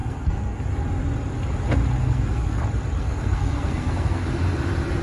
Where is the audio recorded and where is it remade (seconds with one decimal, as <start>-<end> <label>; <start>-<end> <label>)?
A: 0.0-0.6 remade; 0.6-2.0 recorded; 2.0-2.6 remade; 2.6-3.0 recorded; 3.0-4.2 remade; 4.2-5.0 recorded